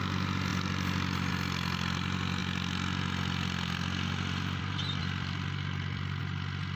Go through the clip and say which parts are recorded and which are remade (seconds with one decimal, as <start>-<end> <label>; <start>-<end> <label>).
0.0-5.0 recorded; 5.0-6.2 remade; 6.2-6.8 recorded